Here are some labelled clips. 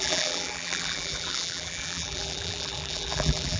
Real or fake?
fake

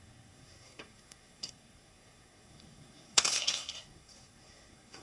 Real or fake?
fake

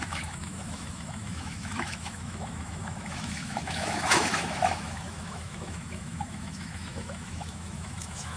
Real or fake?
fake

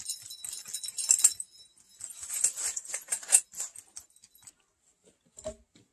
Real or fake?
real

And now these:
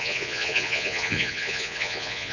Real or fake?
fake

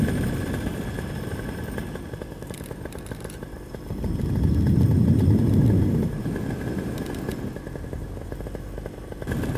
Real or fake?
real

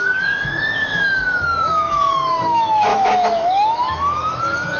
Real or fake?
fake